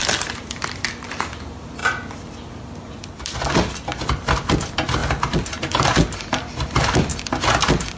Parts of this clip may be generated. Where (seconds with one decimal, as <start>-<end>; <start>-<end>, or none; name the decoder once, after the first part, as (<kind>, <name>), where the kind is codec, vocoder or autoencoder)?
none